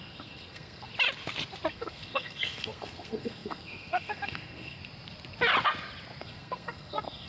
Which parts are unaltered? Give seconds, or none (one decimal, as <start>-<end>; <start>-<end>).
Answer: 0.9-1.7; 4.8-6.2